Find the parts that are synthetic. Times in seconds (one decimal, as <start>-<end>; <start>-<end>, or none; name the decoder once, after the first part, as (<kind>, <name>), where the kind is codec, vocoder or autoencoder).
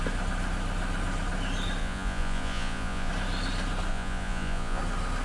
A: 1.8-3.1 (vocoder, Vocos); 3.9-4.8